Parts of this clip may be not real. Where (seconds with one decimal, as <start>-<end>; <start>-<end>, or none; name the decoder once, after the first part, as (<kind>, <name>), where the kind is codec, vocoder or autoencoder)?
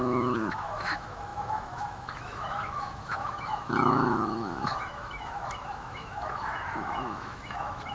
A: 0.0-7.9 (autoencoder, DAC-VAE)